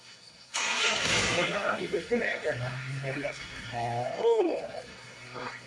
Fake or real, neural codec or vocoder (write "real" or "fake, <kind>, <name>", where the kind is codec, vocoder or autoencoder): fake, codec, SNAC